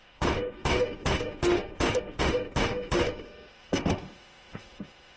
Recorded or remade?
remade